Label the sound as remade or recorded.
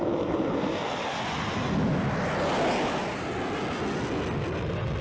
recorded